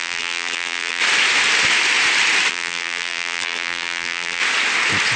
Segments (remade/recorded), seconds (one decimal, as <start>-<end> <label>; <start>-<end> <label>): 0.0-1.0 remade; 1.0-2.5 recorded; 2.5-4.4 remade; 4.4-5.2 recorded